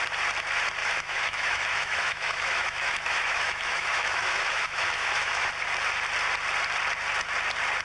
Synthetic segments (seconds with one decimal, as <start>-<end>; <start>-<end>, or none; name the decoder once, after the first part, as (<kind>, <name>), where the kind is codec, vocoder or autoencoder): 0.8-5.5 (autoencoder, DAC-VAE)